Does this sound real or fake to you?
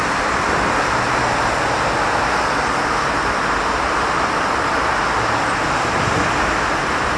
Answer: real